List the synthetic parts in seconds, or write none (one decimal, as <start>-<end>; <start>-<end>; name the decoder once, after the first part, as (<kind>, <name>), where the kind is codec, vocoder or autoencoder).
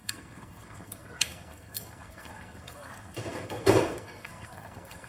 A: 0.0-5.1 (codec, SNAC)